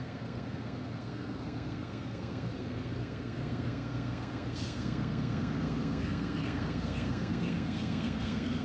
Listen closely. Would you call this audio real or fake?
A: fake